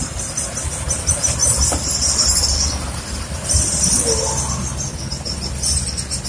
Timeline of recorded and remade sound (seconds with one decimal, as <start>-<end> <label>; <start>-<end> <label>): 0.0-6.3 recorded